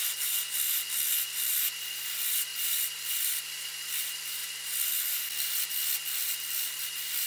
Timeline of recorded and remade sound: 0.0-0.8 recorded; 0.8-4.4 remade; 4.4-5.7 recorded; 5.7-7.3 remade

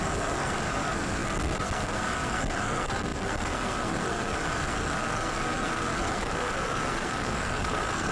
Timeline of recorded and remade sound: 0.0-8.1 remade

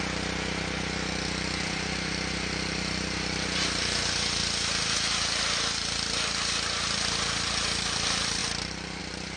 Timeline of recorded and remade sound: 0.0-4.4 remade; 4.4-7.1 recorded; 7.1-9.4 remade

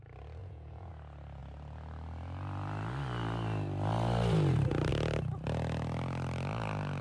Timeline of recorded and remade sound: 0.0-0.4 recorded; 0.4-0.9 remade; 0.9-7.0 recorded

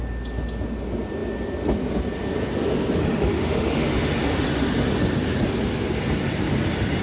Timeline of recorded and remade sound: 0.0-3.0 recorded; 3.0-4.1 remade; 4.1-7.0 recorded